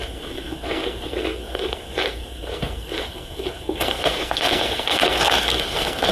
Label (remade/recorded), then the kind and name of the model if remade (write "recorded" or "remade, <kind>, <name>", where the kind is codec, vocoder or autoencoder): remade, codec, SNAC